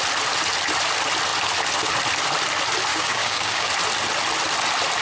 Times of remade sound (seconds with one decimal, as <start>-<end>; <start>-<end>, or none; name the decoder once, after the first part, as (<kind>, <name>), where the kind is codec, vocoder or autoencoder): 2.9-3.7 (codec, DAC)